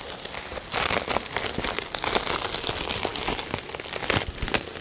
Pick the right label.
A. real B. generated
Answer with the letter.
A